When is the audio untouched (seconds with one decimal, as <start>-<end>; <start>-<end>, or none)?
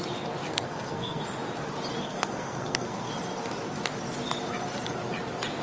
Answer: 0.0-0.5; 1.2-2.0; 3.1-5.6